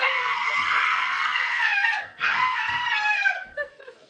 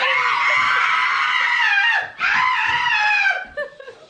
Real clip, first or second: second